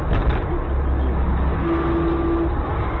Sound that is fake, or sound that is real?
real